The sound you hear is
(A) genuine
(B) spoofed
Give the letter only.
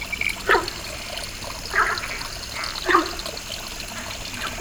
A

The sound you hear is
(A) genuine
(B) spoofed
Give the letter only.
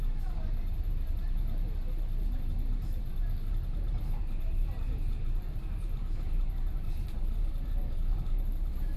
B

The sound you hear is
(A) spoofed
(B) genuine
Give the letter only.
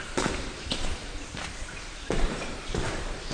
A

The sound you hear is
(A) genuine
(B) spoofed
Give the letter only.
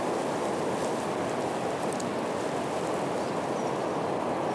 A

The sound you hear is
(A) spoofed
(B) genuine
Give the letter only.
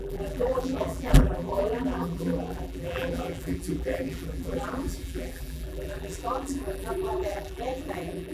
A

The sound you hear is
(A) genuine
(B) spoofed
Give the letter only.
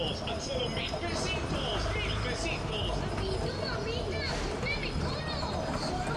A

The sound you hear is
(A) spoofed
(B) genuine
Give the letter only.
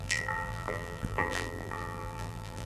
A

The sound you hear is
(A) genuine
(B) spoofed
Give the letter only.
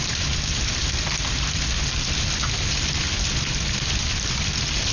B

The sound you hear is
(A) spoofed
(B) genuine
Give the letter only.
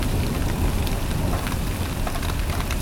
B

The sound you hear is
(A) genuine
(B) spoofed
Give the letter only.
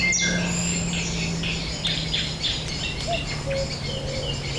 A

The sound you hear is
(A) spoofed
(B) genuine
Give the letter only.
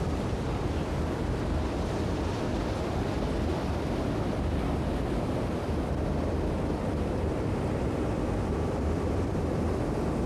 A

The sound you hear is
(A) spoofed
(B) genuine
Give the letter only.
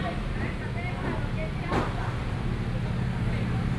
B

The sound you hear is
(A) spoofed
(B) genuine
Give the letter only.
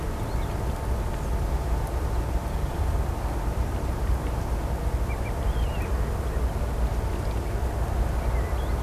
B